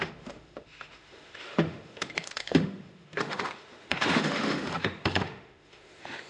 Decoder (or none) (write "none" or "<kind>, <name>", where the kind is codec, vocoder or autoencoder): autoencoder, DAC-VAE